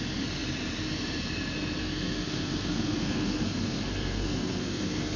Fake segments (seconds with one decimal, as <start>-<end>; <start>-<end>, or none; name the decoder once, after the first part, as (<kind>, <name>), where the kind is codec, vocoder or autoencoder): 1.8-5.2 (codec, SNAC)